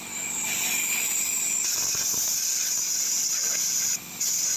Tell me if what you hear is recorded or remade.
recorded